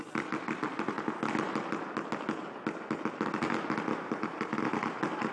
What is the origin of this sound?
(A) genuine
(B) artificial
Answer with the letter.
A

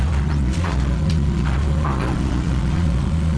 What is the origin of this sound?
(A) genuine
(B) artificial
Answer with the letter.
B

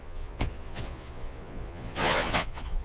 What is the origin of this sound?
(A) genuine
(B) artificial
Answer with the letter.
B